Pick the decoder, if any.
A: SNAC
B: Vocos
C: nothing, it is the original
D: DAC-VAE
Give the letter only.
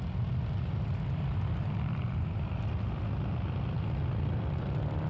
C